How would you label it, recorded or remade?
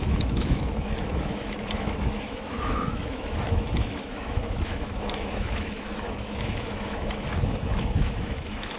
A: remade